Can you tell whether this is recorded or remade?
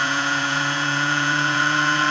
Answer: remade